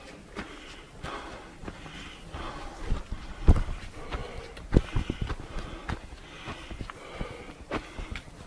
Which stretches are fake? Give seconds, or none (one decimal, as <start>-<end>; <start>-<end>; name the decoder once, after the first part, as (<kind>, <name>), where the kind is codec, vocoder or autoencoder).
none